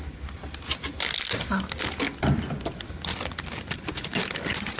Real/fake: real